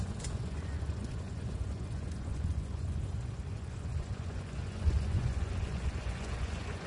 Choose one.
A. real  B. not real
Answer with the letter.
B